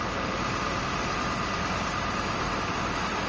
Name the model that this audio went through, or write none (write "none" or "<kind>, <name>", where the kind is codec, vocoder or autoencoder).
none